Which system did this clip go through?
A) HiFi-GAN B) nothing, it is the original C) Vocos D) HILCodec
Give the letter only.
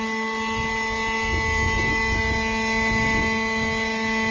B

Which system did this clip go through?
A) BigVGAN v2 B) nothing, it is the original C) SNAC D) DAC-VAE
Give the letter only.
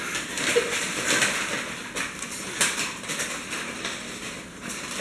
B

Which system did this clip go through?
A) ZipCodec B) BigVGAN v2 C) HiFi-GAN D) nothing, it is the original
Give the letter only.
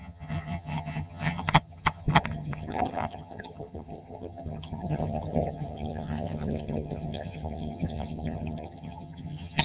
C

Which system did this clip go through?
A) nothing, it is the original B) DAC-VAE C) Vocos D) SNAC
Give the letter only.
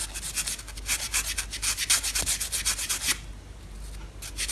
A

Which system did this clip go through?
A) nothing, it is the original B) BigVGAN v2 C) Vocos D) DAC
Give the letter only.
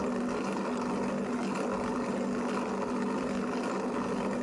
A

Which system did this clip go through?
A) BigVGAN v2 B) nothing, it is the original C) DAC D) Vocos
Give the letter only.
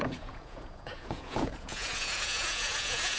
D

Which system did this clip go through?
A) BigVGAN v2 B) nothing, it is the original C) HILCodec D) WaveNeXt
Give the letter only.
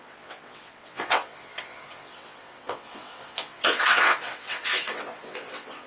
D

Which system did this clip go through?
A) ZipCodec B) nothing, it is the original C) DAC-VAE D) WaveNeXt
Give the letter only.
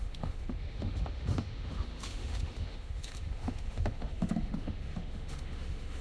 C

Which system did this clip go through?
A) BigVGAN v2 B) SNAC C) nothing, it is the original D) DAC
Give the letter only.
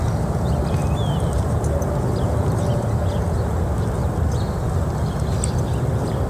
C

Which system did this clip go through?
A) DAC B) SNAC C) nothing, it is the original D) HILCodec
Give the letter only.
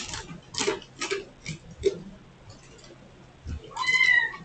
C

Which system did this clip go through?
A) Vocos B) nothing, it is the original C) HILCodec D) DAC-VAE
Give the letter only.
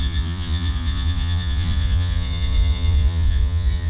A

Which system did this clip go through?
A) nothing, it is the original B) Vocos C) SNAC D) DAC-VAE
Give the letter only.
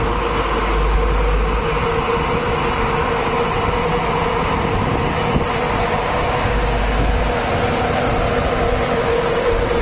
A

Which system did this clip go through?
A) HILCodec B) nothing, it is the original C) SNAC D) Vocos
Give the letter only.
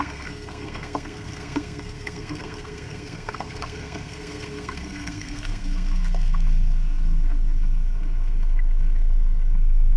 C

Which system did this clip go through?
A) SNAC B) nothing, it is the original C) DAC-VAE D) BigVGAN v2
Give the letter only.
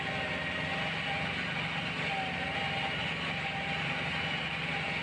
B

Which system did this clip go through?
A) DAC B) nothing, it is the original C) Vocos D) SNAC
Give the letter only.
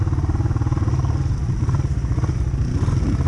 B